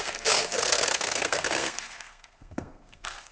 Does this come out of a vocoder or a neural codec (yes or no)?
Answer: yes